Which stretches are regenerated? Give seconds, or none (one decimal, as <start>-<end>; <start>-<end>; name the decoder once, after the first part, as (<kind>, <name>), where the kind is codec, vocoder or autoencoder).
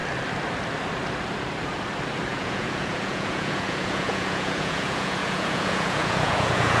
2.3-6.8 (vocoder, Vocos)